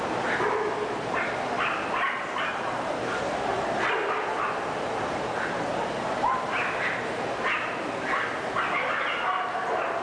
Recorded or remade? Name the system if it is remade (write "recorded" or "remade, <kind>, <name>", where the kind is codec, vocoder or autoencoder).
recorded